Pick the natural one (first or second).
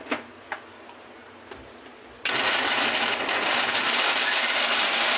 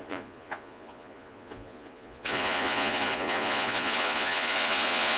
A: first